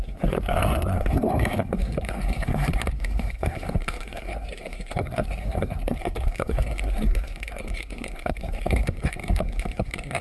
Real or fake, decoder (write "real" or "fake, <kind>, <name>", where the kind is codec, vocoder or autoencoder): fake, codec, SNAC